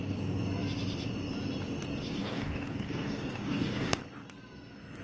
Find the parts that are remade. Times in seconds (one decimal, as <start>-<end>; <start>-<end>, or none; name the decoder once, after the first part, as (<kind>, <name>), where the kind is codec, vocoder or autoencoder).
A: 2.1-4.0 (codec, DAC)